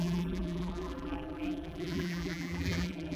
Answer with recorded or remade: remade